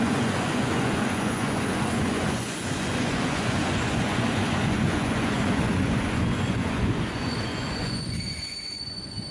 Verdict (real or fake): fake